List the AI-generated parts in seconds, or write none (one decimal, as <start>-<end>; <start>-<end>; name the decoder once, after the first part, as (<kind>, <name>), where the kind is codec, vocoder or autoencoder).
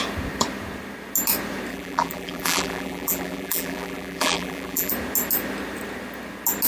1.7-4.9 (vocoder, BigVGAN v2)